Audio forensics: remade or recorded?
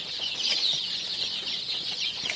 remade